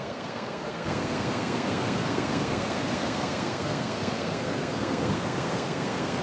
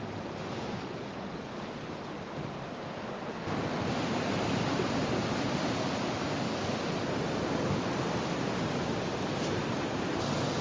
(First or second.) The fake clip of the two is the first